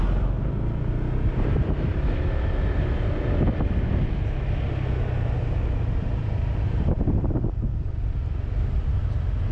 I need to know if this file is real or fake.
real